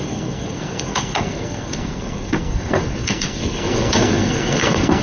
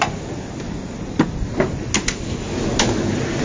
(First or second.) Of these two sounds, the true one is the second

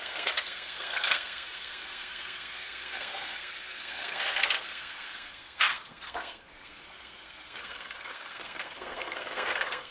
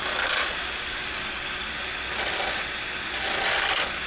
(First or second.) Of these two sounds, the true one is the second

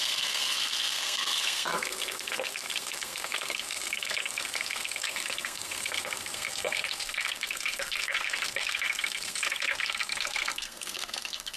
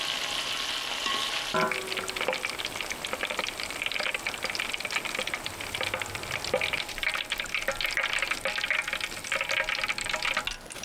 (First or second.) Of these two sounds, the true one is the second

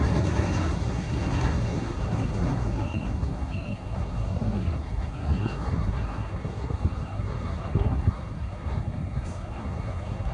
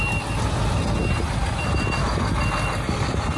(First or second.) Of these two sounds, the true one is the second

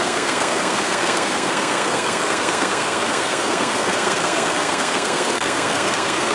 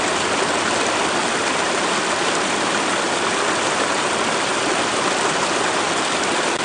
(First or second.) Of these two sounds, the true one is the second